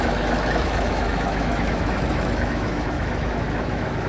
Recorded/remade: remade